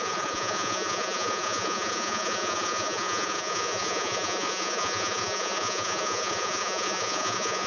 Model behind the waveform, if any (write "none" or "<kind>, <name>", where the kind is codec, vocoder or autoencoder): vocoder, Vocos